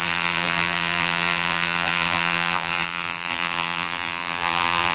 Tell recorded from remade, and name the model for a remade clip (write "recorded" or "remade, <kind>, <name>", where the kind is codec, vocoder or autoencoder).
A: remade, vocoder, BigVGAN v2